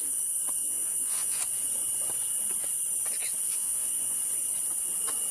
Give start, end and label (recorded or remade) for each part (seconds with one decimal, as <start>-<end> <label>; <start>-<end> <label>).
0.0-0.6 recorded; 0.6-1.4 remade; 1.4-3.5 recorded; 3.5-4.2 remade; 4.2-5.3 recorded